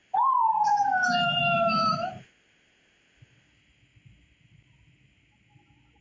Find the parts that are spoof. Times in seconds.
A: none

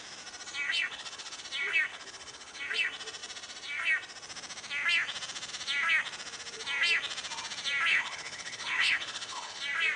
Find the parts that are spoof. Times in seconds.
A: 0.9-1.4 (codec, HILCodec); 1.9-2.6; 7.9-9.6

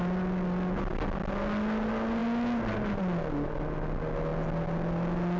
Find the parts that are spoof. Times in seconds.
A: none

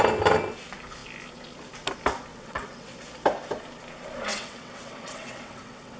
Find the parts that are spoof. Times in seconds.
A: 2.3-3.0 (vocoder, WaveNeXt); 4.3-6.0

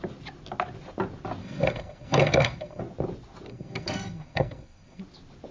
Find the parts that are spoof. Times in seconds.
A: 1.4-2.8 (codec, SNAC); 3.5-5.0